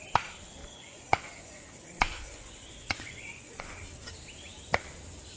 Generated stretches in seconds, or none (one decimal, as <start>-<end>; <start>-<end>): 0.6-3.8